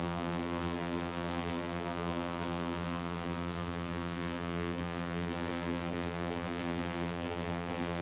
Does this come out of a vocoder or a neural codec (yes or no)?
yes